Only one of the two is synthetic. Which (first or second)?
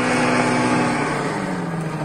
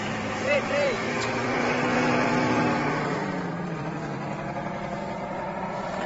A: second